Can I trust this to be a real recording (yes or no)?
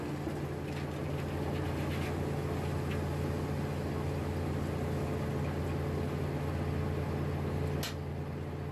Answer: yes